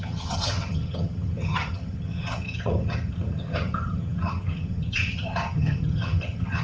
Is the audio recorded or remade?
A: remade